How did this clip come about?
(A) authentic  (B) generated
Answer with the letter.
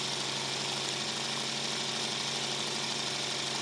A